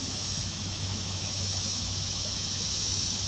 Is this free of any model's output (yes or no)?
no